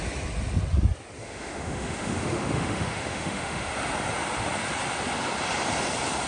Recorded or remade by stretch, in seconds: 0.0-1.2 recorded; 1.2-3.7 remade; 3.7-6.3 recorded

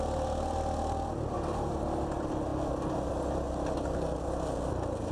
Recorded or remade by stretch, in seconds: 0.0-5.1 recorded

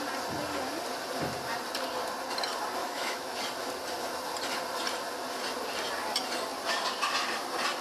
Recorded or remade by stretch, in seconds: 0.0-2.8 recorded; 2.8-3.4 remade; 3.4-7.8 recorded

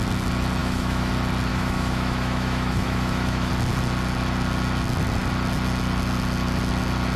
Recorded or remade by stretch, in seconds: 0.0-0.6 recorded; 0.6-1.1 remade; 1.1-1.5 recorded; 1.5-3.5 remade; 3.5-7.2 recorded

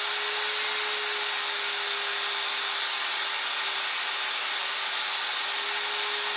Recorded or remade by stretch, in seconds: 0.0-6.4 recorded